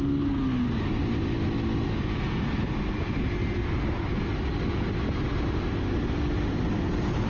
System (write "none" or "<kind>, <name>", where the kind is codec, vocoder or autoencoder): none